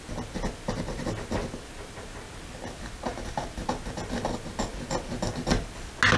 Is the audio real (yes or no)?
yes